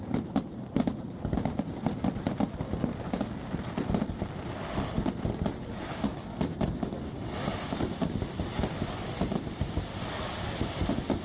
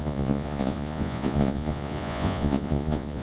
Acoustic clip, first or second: first